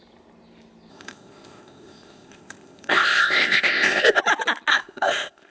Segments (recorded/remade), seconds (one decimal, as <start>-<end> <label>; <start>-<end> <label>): 0.0-0.9 recorded; 0.9-4.2 remade; 4.2-4.7 recorded; 4.7-5.5 remade